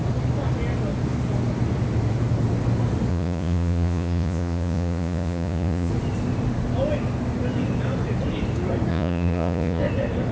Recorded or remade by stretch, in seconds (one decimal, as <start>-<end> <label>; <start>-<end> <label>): 0.0-3.1 recorded; 3.1-5.9 remade; 5.9-8.9 recorded; 8.9-9.8 remade; 9.8-10.3 recorded